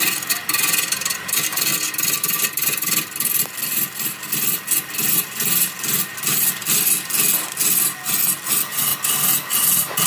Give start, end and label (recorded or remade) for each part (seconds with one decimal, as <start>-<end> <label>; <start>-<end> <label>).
0.0-10.1 recorded